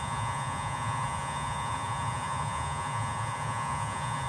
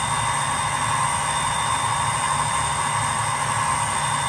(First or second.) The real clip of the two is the second